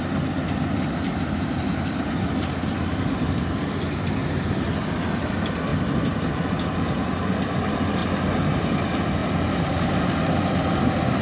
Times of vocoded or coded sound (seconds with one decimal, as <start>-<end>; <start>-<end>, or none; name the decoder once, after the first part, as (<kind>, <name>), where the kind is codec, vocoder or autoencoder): 0.0-4.2 (vocoder, BigVGAN v2); 5.1-5.7; 6.6-8.0; 8.6-9.2; 10.0-11.2